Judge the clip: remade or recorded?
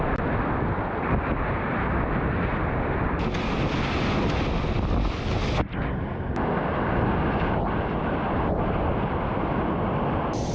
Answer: recorded